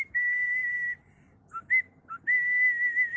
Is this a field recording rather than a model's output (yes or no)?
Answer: yes